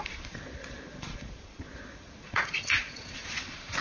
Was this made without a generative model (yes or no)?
no